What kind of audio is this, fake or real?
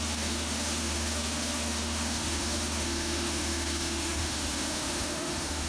fake